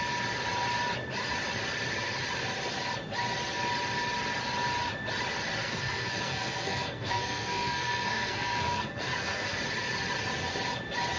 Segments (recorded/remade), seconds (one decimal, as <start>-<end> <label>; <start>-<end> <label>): 0.0-5.6 recorded; 5.6-9.6 remade; 9.6-11.2 recorded